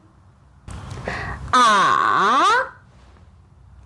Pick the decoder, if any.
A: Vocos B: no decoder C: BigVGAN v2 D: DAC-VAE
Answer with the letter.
B